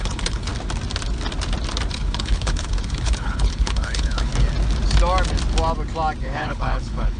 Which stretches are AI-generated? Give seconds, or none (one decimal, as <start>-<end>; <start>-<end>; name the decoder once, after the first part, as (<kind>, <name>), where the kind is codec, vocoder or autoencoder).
0.0-0.5 (codec, HILCodec); 1.9-4.3; 6.2-7.2